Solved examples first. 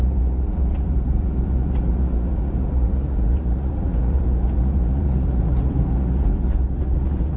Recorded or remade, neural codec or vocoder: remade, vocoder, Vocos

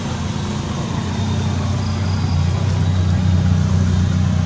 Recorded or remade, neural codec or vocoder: recorded